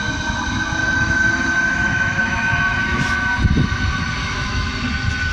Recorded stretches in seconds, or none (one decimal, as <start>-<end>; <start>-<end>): 0.0-0.8; 3.0-4.2; 4.8-5.3